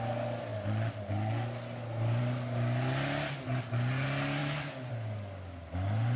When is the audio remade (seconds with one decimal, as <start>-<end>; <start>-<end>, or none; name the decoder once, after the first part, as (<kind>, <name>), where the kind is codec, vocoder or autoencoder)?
none